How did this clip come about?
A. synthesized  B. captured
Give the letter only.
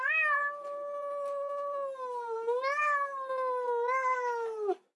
B